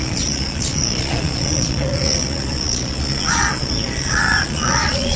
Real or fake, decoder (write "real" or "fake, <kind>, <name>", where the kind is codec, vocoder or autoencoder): fake, vocoder, Vocos